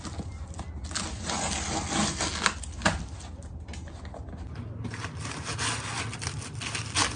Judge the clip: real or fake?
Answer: real